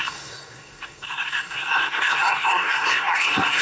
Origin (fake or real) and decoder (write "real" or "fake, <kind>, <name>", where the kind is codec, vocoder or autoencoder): fake, codec, SNAC